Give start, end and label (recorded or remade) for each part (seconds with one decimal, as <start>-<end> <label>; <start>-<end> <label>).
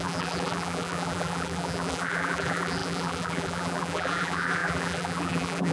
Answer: 0.0-5.7 remade